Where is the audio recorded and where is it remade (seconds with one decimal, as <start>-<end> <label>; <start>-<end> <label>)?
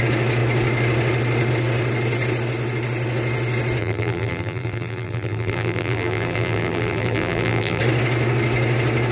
0.0-3.8 recorded; 3.8-7.8 remade; 7.8-9.1 recorded